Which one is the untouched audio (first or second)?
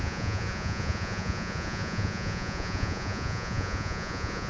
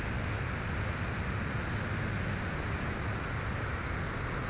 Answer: second